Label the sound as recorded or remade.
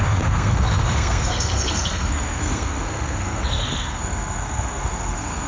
remade